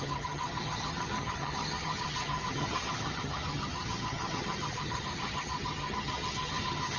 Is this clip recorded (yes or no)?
no